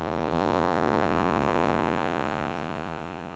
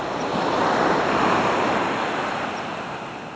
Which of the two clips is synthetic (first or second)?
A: first